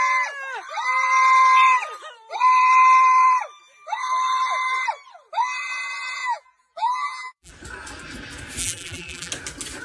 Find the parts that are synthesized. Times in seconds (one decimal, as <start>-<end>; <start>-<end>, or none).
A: 6.2-7.5; 8.6-9.3